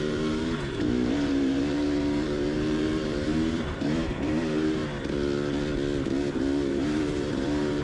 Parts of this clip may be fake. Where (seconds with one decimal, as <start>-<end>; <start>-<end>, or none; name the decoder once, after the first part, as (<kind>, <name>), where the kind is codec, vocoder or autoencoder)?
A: 0.0-4.8 (vocoder, BigVGAN v2); 6.7-7.8

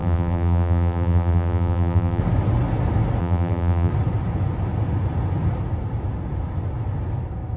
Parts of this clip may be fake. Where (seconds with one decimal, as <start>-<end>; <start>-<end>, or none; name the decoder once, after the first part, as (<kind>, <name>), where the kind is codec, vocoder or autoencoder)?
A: 0.0-2.2 (vocoder, BigVGAN v2); 3.2-3.9

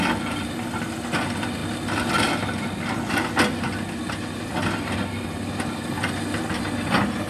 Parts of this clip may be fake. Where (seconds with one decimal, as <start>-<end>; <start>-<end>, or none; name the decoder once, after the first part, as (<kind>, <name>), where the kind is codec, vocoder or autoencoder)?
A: none

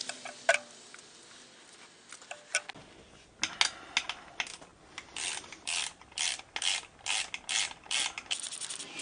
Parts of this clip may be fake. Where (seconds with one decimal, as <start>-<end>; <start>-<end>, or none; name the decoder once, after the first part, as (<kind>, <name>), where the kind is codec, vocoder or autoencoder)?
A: 4.7-6.4 (vocoder, BigVGAN v2)